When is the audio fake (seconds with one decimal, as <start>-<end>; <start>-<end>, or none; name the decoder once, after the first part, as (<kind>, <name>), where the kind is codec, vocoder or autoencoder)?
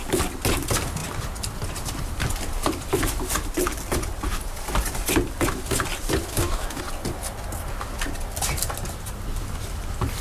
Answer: 6.3-6.8 (codec, DAC)